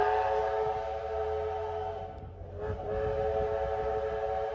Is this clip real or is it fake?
real